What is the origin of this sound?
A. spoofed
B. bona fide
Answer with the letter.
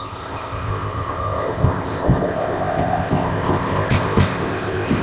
A